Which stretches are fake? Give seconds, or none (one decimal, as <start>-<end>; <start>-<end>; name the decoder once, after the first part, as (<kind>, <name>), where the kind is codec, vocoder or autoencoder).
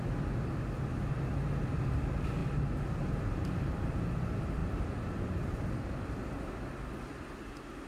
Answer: none